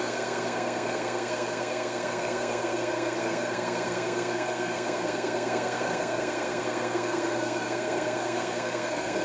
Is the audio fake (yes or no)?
yes